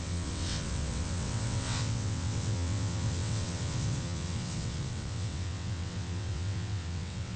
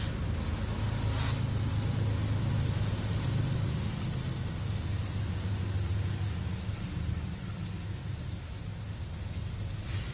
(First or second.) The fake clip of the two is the first